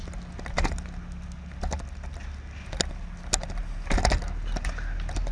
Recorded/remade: recorded